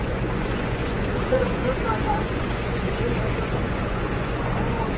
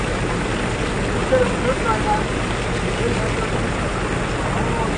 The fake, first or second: first